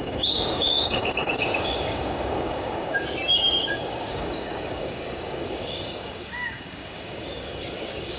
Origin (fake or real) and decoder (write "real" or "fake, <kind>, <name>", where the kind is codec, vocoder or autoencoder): fake, codec, DAC